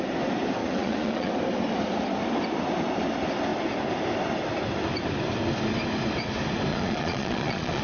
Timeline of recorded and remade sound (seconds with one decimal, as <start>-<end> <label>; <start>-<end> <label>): 0.0-0.6 recorded; 0.6-1.3 remade; 1.3-6.7 recorded; 6.7-7.8 remade